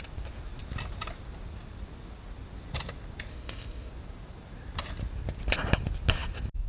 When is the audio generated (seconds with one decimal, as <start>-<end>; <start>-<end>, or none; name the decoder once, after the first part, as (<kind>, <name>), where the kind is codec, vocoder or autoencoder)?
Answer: 3.3-3.9 (codec, ZipCodec)

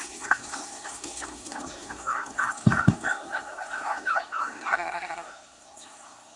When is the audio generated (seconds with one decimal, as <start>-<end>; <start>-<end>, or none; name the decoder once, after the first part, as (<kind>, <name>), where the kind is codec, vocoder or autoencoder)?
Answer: 0.0-6.4 (codec, SNAC)

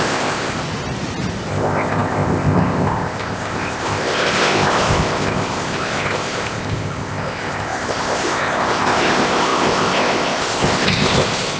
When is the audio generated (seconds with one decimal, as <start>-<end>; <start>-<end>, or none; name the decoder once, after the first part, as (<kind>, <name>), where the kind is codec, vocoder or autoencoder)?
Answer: 0.0-0.6 (codec, ZipCodec); 1.5-11.6

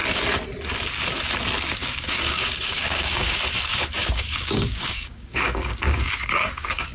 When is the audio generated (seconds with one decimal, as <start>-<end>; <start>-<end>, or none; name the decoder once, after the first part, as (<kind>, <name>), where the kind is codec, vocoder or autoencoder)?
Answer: 1.8-3.4 (codec, DAC); 4.0-6.9

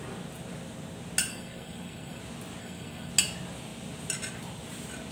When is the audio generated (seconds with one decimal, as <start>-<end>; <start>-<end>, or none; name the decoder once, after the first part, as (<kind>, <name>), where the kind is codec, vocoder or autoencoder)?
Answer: 1.3-2.2 (codec, SNAC); 2.6-3.1

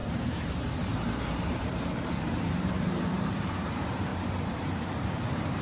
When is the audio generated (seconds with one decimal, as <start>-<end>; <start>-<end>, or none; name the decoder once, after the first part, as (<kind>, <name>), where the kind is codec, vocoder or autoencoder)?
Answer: 0.0-5.6 (vocoder, BigVGAN v2)

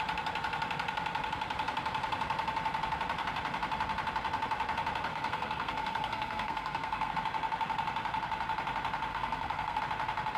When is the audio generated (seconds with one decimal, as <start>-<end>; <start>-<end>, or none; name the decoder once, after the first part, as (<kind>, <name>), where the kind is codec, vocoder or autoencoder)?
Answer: 5.1-7.1 (codec, SNAC); 9.1-9.8